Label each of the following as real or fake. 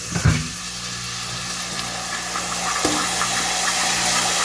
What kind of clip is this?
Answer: real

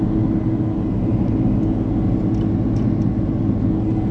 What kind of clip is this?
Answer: real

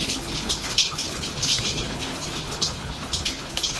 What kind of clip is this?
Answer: fake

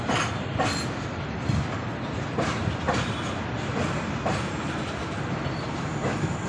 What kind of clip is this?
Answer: real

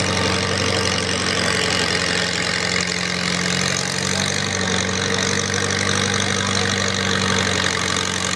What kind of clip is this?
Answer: real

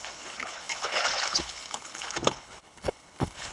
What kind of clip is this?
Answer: fake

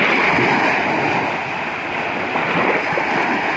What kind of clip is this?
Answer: real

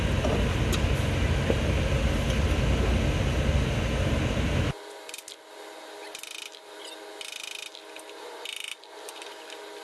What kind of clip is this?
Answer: real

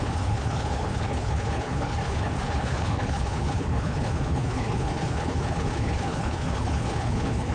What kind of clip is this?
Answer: fake